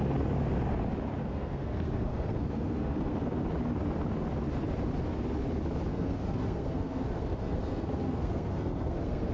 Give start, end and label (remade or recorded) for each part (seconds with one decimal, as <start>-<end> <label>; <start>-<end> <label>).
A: 0.0-1.2 recorded; 1.2-3.4 remade; 3.4-5.9 recorded; 5.9-9.3 remade